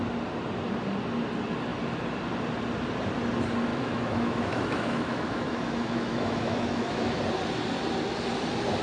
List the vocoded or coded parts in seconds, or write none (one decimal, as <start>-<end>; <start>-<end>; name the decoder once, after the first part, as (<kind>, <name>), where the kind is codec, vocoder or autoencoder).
3.7-7.2 (autoencoder, DAC-VAE)